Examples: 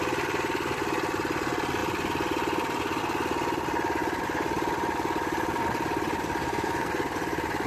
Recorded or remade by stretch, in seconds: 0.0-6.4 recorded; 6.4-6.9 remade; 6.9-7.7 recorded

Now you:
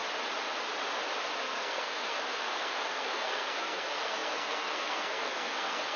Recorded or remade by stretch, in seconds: 0.0-1.4 recorded; 1.4-6.0 remade